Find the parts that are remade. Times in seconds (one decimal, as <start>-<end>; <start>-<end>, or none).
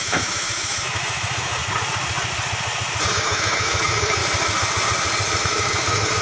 0.0-1.6; 3.1-4.2; 5.4-6.2